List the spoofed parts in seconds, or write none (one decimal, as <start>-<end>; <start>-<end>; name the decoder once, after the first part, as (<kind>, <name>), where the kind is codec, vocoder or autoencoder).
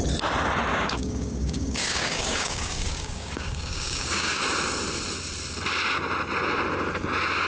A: 0.7-4.4 (codec, DAC)